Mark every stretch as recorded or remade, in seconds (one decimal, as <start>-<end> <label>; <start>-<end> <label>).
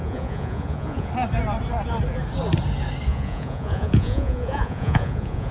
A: 0.0-1.1 remade; 1.1-3.1 recorded; 3.1-5.5 remade